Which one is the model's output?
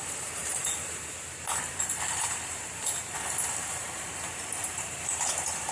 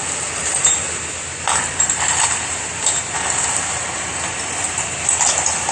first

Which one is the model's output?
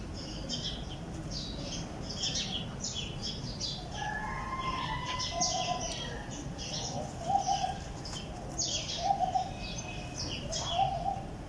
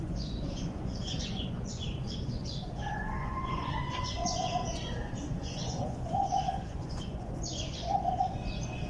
second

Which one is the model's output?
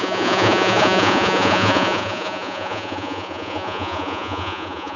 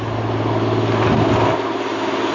first